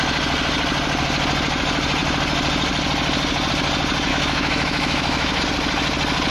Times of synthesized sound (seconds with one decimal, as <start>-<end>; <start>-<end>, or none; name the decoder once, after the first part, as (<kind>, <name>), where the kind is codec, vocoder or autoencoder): 4.1-5.4 (autoencoder, DAC-VAE)